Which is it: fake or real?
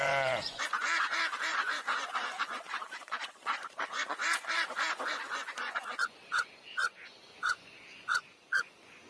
fake